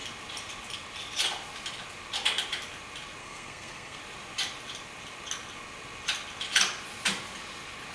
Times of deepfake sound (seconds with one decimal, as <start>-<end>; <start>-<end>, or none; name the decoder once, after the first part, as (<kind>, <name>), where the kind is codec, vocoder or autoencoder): 3.2-4.0 (codec, SNAC)